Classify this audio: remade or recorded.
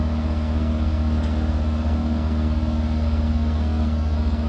remade